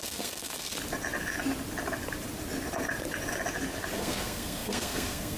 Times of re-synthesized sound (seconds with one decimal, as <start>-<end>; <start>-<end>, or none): 0.0-0.7; 3.9-5.4